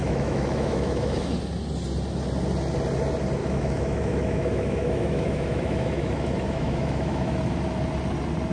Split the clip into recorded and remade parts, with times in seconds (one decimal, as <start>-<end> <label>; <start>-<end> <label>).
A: 0.0-1.3 remade; 1.3-3.4 recorded; 3.4-7.4 remade; 7.4-8.5 recorded

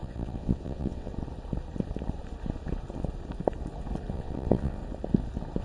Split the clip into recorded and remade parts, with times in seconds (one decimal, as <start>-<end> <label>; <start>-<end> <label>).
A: 0.0-1.1 remade; 1.1-4.1 recorded; 4.1-4.8 remade; 4.8-5.6 recorded

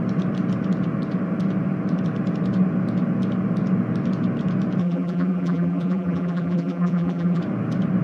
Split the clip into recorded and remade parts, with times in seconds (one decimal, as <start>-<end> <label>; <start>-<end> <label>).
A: 0.0-4.8 recorded; 4.8-7.4 remade; 7.4-8.0 recorded

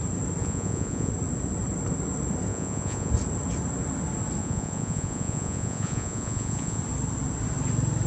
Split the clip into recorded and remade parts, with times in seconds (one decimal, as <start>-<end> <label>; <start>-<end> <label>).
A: 0.0-0.4 recorded; 0.4-1.1 remade; 1.1-2.5 recorded; 2.5-3.1 remade; 3.1-4.4 recorded; 4.4-6.8 remade; 6.8-8.1 recorded

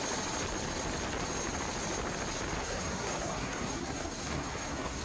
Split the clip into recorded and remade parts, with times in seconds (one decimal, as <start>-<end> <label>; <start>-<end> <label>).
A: 0.0-2.6 recorded; 2.6-5.0 remade

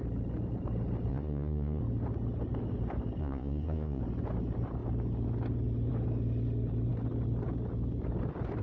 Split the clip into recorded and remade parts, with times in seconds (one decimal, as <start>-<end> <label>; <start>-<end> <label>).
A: 0.0-1.1 recorded; 1.1-1.8 remade; 1.8-3.2 recorded; 3.2-4.0 remade; 4.0-8.6 recorded